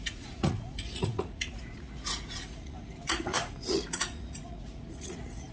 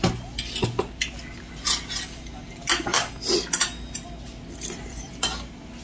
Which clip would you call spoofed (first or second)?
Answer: first